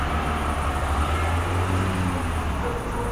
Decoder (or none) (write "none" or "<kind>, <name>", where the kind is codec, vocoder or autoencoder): none